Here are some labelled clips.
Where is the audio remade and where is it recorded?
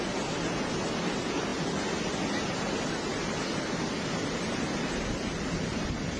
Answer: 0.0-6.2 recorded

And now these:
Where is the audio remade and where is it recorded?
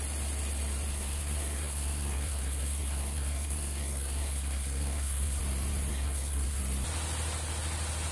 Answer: 0.0-0.9 recorded; 0.9-5.4 remade; 5.4-5.9 recorded; 5.9-6.6 remade; 6.6-8.1 recorded